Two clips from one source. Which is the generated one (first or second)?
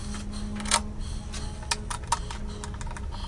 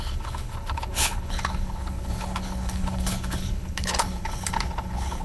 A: second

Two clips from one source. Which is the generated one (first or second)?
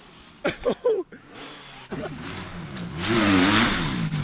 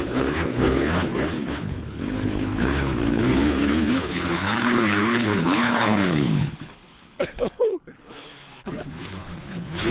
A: second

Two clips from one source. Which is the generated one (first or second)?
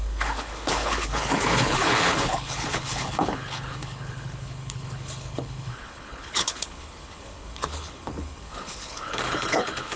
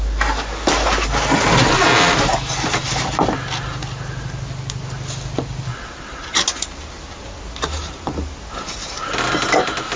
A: first